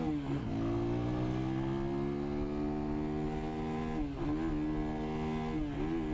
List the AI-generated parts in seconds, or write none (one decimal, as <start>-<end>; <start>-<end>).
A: none